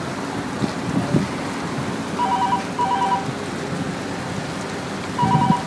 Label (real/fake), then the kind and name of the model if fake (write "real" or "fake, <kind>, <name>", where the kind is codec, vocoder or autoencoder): real